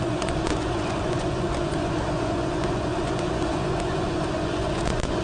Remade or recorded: remade